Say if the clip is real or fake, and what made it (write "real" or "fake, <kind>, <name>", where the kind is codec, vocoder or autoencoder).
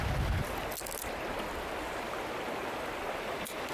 real